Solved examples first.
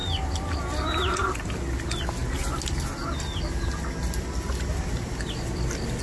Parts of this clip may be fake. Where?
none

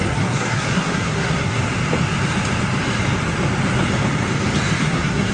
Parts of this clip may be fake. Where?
0.0-1.6 (codec, SNAC); 4.8-5.3